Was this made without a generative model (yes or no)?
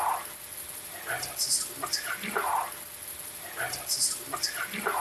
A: yes